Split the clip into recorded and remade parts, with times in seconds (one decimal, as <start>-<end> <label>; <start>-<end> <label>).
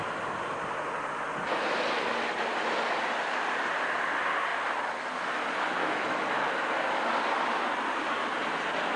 0.0-5.8 recorded; 5.8-6.5 remade; 6.5-9.0 recorded